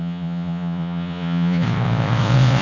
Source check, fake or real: fake